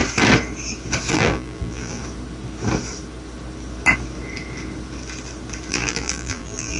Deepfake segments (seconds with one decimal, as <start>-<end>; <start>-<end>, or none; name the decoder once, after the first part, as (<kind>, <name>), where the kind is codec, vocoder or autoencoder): 1.1-2.0 (vocoder, BigVGAN v2); 5.7-6.8